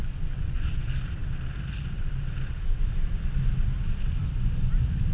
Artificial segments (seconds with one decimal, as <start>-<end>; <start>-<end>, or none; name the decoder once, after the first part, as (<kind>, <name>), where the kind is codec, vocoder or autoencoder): 0.5-5.1 (vocoder, BigVGAN v2)

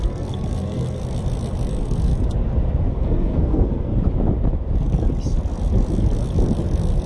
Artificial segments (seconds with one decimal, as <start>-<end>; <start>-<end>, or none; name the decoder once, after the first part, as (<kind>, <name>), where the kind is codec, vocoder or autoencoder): 0.0-1.0 (codec, SNAC); 1.7-2.1; 2.9-3.9

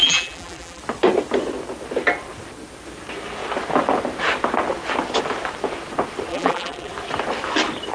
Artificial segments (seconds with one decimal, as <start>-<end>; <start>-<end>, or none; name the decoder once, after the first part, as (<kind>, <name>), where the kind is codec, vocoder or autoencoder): 0.0-0.8 (vocoder, BigVGAN v2); 6.3-6.9

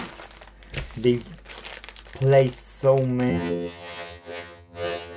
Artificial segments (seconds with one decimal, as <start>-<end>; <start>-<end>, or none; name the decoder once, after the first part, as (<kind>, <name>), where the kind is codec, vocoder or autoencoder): 3.3-5.2 (vocoder, HiFi-GAN)

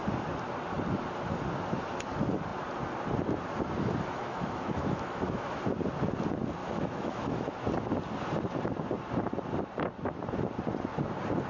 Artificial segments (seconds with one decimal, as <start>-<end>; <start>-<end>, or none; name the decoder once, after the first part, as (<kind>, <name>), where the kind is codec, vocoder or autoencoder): 4.2-5.6 (autoencoder, DAC-VAE); 6.6-7.5